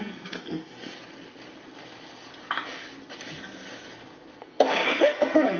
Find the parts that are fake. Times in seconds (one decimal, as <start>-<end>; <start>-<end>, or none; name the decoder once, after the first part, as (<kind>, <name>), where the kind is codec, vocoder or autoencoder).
0.0-1.0 (codec, SNAC); 4.4-5.6